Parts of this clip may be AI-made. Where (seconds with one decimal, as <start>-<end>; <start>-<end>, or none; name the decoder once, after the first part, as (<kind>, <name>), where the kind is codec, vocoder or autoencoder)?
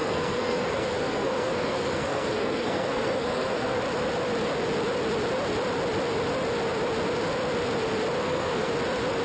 0.0-3.8 (codec, SNAC); 8.2-8.7